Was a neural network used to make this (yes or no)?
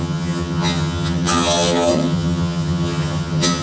yes